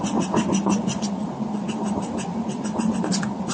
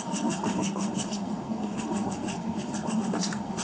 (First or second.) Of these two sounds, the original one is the first